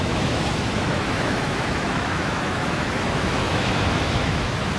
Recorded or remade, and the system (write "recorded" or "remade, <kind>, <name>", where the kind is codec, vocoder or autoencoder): remade, autoencoder, DAC-VAE